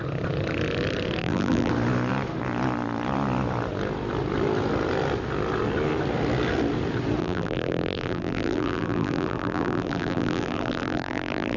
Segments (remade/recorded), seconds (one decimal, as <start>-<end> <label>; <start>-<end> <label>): 0.0-1.2 recorded; 1.2-1.7 remade; 1.7-7.2 recorded; 7.2-11.6 remade